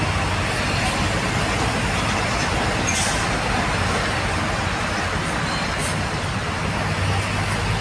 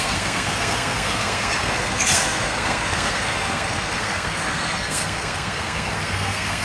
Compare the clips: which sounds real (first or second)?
first